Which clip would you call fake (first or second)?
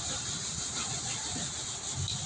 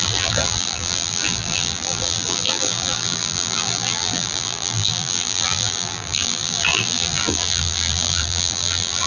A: second